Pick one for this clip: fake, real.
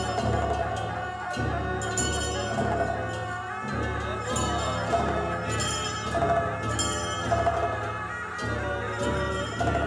real